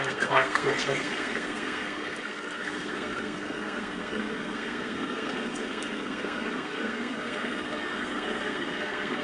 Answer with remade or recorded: remade